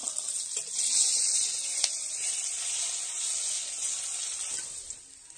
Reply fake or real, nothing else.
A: real